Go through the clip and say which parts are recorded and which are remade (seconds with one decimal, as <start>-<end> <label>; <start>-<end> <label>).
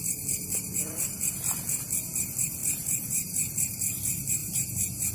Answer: 0.0-2.6 recorded; 2.6-3.5 remade; 3.5-4.4 recorded; 4.4-5.1 remade